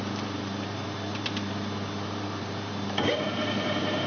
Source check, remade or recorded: remade